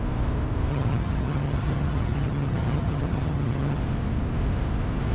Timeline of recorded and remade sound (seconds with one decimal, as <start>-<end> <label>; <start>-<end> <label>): 0.0-0.7 recorded; 0.7-3.8 remade; 3.8-5.1 recorded